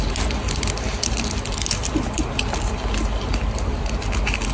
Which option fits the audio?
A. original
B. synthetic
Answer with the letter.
A